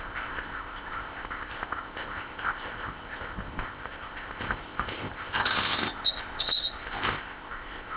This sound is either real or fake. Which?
fake